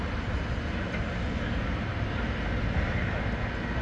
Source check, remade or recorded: recorded